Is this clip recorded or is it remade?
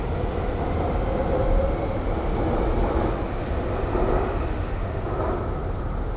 recorded